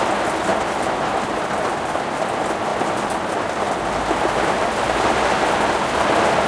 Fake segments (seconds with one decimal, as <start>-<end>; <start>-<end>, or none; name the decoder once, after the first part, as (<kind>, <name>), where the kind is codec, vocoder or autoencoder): none